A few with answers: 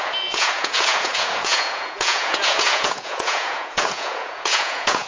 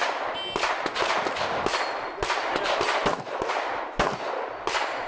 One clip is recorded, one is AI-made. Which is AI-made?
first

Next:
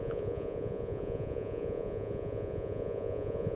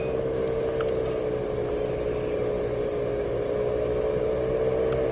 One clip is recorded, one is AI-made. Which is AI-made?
first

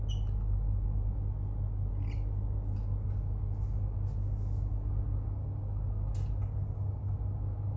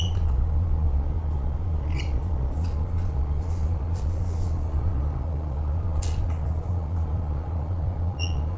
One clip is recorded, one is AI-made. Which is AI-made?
second